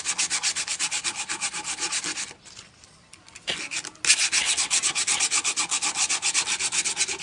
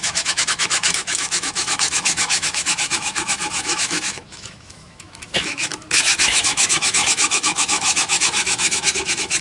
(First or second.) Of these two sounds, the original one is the first